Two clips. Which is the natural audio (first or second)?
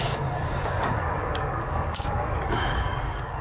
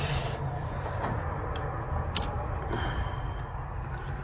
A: second